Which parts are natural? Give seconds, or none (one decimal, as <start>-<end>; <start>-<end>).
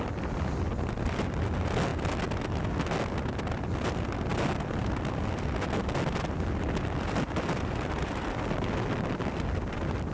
0.0-10.1